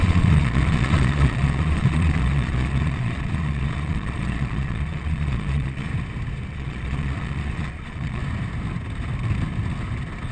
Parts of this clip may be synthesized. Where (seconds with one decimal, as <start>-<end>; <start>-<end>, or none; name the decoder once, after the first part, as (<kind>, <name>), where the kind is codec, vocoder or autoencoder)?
0.0-5.9 (vocoder, Vocos); 6.5-8.2